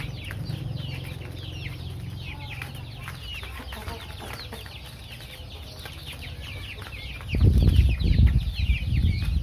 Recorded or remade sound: recorded